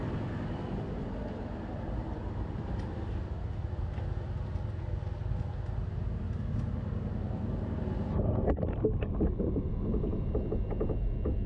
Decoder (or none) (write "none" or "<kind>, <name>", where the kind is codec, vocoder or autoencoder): none